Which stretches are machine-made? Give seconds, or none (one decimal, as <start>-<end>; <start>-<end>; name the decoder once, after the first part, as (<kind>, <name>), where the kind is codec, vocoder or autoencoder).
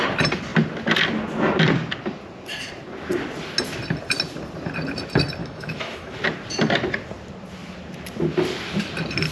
5.4-6.2 (autoencoder, DAC-VAE)